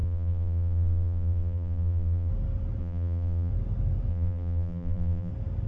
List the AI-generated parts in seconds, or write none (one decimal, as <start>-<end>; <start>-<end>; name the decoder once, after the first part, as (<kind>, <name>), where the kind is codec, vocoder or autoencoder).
0.0-2.3 (vocoder, BigVGAN v2); 2.8-3.5; 4.1-5.3